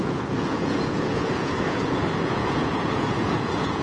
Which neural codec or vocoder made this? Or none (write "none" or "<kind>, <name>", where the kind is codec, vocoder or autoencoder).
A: vocoder, Vocos